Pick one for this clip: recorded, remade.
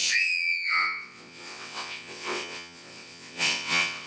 remade